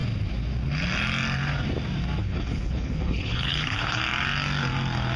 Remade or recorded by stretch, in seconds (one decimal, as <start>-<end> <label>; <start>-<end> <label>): 0.0-2.2 recorded; 2.2-4.0 remade; 4.0-5.2 recorded